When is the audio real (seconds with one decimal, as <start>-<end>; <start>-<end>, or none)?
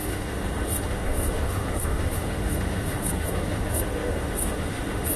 none